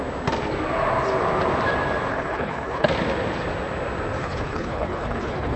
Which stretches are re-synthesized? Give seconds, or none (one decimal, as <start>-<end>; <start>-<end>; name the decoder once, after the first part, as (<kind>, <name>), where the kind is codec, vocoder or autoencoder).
2.1-2.9 (codec, HILCodec); 4.2-5.6